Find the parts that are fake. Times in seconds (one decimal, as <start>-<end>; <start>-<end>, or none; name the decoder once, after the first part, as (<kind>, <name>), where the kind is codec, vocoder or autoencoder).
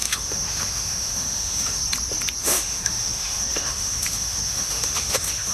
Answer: 0.0-1.8 (autoencoder, DAC-VAE); 2.4-5.5